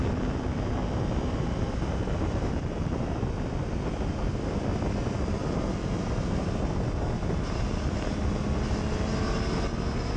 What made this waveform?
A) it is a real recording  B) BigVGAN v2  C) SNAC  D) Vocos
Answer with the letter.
A